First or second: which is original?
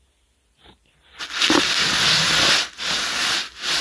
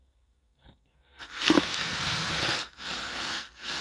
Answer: first